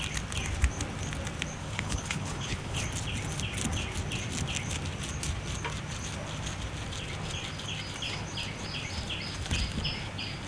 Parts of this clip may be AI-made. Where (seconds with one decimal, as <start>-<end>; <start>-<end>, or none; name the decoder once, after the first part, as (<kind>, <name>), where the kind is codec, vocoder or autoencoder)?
1.6-2.8 (codec, HILCodec)